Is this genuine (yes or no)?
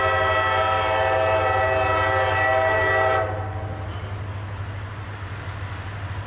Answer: yes